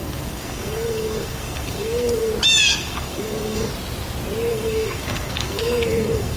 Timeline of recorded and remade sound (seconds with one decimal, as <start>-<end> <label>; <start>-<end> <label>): 0.0-2.3 remade; 2.3-2.7 recorded; 2.7-3.7 remade; 3.7-4.5 recorded; 4.5-6.4 remade